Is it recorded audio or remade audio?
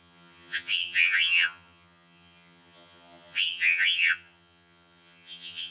remade